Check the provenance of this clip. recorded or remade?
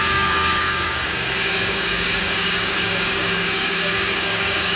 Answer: remade